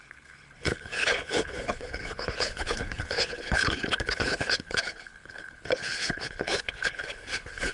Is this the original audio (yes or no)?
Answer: no